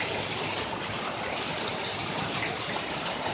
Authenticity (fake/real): real